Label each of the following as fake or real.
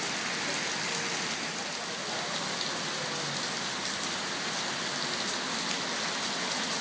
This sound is real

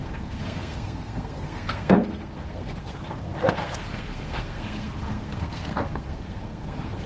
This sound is fake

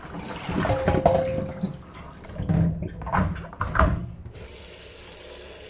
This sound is real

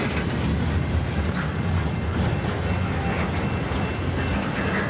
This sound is real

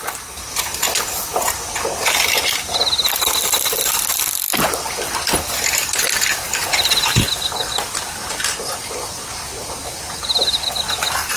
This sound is real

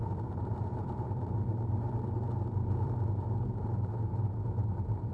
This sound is fake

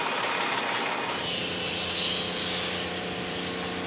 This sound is real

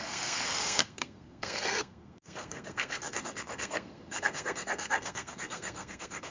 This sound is fake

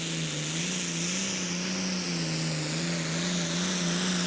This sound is real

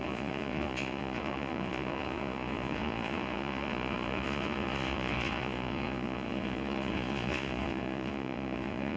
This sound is fake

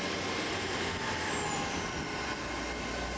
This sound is real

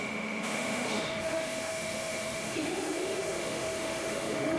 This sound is fake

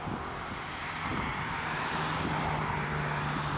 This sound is real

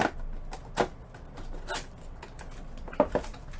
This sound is real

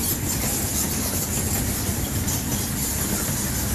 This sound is real